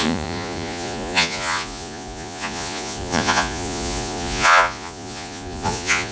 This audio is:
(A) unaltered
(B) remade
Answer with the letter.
B